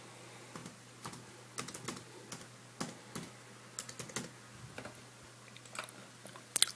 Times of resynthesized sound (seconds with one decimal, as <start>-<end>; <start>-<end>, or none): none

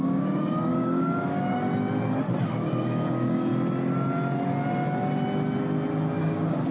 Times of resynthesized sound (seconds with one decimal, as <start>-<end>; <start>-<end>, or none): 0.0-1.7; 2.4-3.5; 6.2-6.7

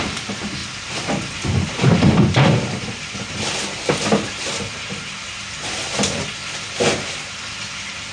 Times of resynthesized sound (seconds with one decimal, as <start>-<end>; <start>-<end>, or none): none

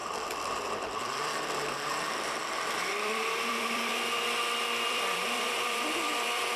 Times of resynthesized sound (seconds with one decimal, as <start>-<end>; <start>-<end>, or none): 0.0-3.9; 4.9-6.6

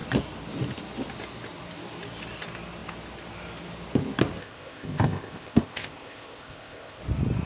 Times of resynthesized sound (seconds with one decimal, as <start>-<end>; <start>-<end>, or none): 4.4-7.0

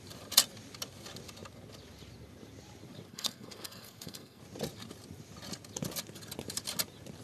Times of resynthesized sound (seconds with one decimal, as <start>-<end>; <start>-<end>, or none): 3.1-4.4

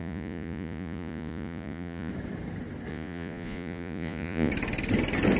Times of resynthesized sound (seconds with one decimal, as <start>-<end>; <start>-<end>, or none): 0.0-2.1; 2.9-4.5

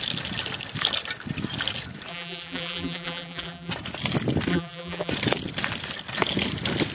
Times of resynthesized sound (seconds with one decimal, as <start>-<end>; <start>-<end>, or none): 2.1-3.7; 4.5-5.1